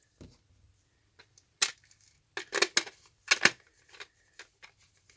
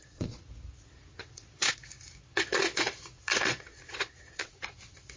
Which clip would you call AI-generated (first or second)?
second